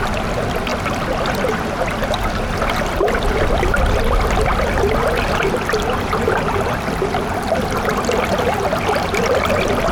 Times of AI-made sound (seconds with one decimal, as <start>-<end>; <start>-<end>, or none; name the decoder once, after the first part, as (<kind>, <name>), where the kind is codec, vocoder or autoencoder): none